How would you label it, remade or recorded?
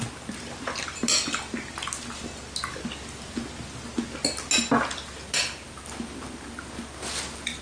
recorded